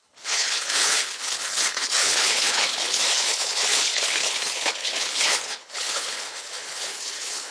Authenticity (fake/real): fake